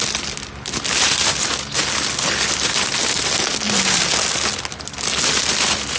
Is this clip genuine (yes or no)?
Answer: yes